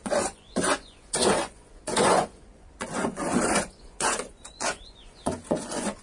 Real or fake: fake